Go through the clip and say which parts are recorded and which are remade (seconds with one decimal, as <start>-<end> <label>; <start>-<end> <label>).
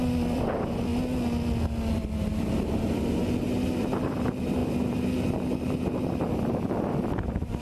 0.0-0.9 remade; 0.9-1.9 recorded; 1.9-4.6 remade; 4.6-6.7 recorded; 6.7-7.6 remade